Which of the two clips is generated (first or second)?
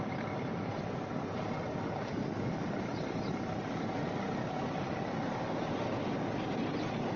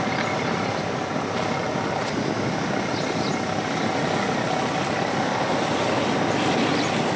first